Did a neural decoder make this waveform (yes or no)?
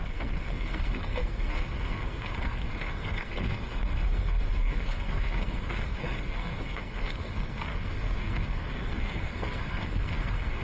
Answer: yes